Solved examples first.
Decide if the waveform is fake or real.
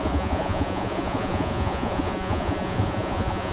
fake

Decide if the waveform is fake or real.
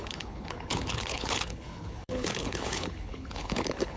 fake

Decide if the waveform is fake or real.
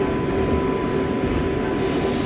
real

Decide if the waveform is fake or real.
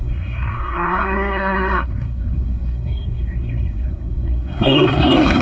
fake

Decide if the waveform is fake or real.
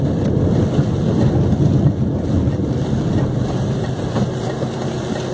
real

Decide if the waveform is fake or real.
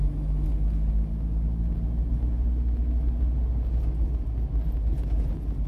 real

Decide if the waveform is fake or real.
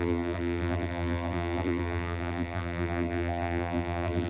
fake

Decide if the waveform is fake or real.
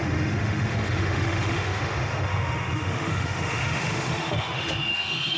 fake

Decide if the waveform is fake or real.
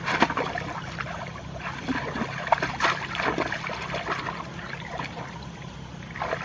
fake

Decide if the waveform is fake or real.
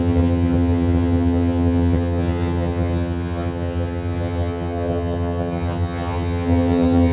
fake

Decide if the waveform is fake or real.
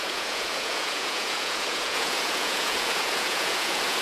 fake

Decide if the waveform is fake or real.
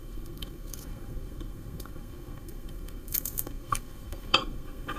fake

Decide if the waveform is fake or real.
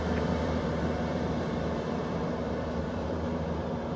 fake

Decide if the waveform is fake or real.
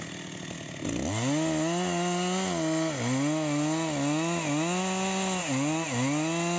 real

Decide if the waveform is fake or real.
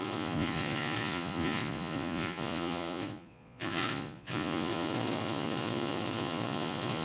fake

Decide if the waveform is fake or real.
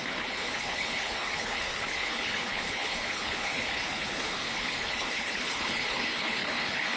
fake